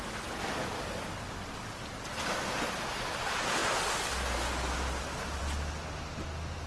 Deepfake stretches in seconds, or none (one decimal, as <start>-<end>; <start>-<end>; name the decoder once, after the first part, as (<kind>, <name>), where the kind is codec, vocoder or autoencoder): none